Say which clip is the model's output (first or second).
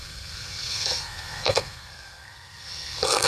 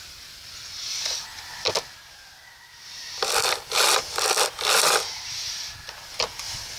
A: first